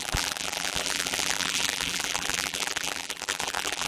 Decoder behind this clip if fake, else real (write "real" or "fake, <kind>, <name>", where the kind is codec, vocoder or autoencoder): fake, vocoder, BigVGAN v2